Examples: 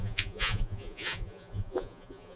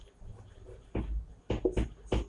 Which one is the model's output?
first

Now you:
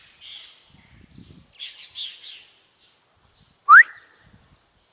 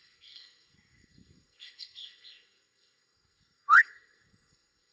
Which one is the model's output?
second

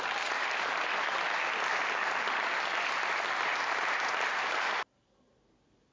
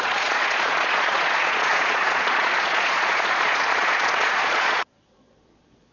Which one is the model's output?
second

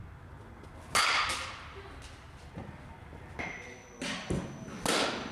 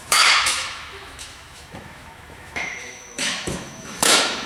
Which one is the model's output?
second